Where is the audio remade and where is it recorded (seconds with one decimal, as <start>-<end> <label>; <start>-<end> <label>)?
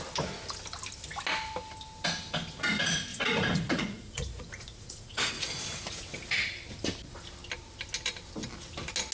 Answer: 0.0-3.1 recorded; 3.1-5.3 remade; 5.3-9.1 recorded